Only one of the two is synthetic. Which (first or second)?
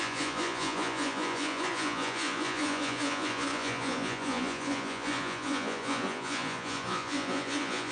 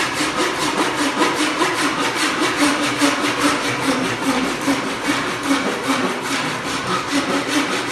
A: first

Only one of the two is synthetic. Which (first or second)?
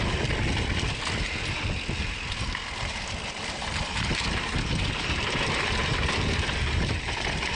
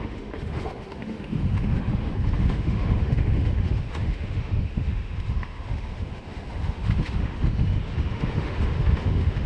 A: second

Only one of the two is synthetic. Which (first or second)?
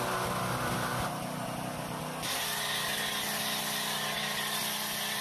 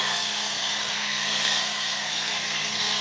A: second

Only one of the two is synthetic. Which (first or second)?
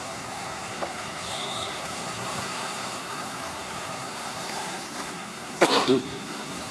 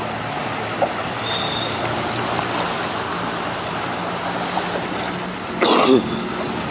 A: first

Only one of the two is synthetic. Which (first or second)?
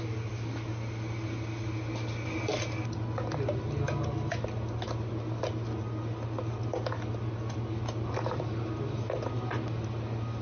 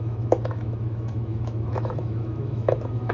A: second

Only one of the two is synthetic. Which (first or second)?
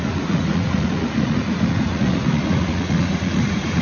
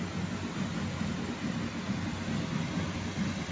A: first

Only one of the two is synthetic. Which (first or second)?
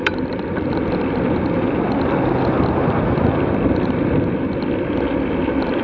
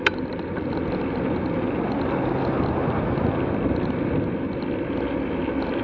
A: first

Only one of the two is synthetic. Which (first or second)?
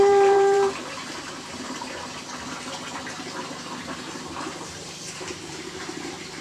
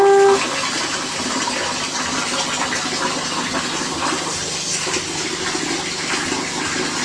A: first